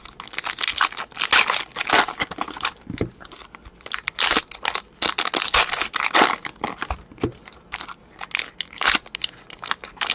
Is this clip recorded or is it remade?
recorded